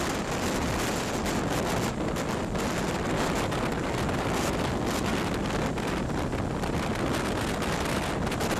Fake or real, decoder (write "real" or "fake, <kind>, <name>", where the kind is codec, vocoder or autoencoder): real